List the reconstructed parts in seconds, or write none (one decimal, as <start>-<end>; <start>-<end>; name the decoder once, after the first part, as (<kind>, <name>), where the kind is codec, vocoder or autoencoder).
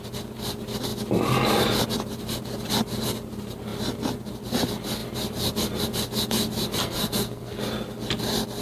6.8-7.6 (codec, SNAC)